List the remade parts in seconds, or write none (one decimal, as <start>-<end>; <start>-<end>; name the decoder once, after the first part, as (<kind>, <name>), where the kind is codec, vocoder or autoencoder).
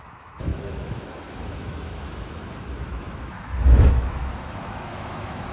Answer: 0.0-5.5 (autoencoder, DAC-VAE)